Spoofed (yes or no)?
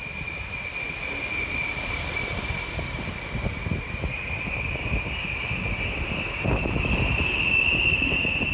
no